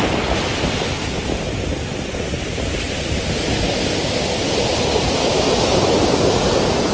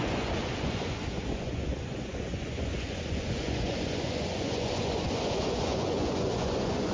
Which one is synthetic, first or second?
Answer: second